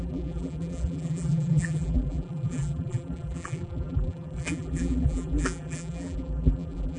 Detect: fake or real fake